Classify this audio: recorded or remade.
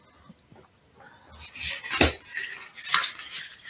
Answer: recorded